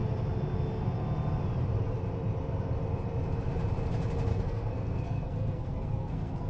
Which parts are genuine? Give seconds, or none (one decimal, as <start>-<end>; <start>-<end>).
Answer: 0.0-4.3